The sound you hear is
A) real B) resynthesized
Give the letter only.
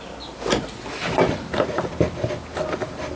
A